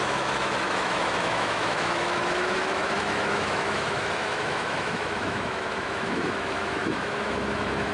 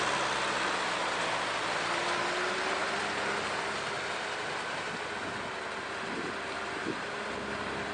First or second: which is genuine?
second